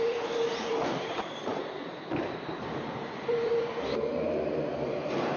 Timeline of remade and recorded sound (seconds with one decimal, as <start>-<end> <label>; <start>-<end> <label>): 0.0-5.4 remade